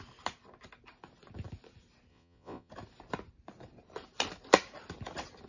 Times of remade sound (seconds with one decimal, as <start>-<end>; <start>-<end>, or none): 2.1-2.7